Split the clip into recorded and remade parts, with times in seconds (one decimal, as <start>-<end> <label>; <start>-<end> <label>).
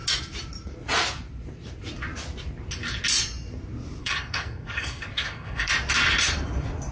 0.0-4.0 recorded; 4.0-5.7 remade; 5.7-6.9 recorded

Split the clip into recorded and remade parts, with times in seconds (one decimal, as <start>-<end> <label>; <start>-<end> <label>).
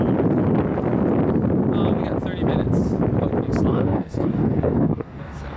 0.0-3.7 recorded; 3.7-5.6 remade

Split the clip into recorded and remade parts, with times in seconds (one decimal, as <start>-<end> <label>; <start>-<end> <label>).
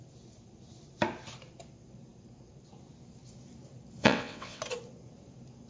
0.0-4.0 recorded; 4.0-4.6 remade; 4.6-5.7 recorded